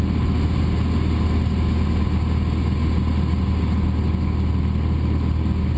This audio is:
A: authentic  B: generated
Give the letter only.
A